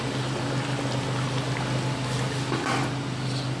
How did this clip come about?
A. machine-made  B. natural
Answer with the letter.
B